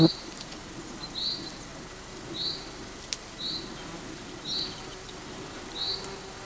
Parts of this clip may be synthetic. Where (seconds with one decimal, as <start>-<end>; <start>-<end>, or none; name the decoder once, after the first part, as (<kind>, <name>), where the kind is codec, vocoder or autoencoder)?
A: none